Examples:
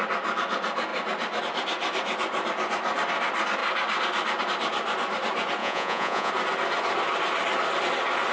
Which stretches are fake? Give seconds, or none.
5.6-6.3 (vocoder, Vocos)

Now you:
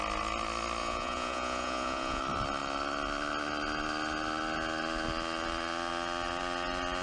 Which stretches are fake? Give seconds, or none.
0.8-2.2 (vocoder, Vocos)

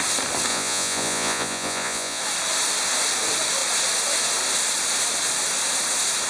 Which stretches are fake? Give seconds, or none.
0.5-2.2 (vocoder, Vocos)